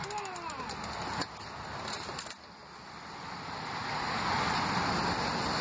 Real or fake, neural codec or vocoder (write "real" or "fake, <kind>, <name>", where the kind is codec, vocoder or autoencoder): real